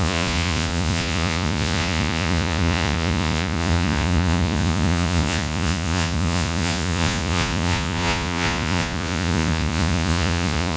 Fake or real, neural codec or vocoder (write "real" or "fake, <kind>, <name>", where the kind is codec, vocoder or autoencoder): fake, vocoder, Vocos